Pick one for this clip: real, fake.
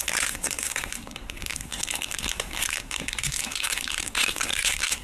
fake